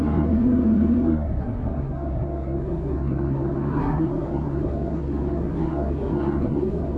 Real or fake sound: fake